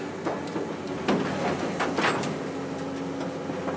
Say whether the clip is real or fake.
real